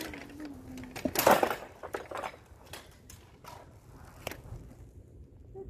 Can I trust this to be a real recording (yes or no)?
yes